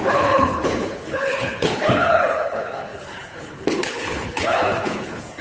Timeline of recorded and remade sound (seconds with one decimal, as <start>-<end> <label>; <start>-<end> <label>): 0.0-5.4 remade